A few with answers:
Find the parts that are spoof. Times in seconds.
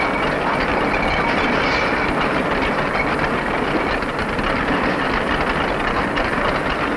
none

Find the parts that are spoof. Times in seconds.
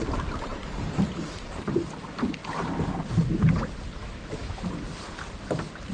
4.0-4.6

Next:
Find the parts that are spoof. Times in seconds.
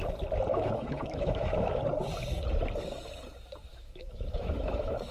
0.5-1.8; 3.7-5.1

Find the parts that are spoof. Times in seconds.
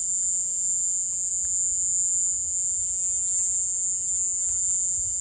none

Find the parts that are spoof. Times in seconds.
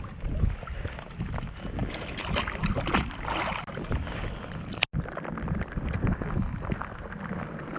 none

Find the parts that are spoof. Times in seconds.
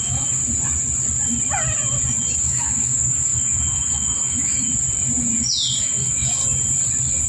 0.0-0.4; 2.4-4.7; 5.8-6.4